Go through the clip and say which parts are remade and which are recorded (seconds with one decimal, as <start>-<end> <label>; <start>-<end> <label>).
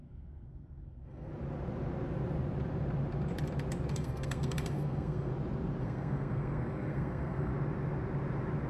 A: 0.0-1.3 remade; 1.3-3.9 recorded; 3.9-5.3 remade; 5.3-5.8 recorded; 5.8-7.5 remade; 7.5-8.7 recorded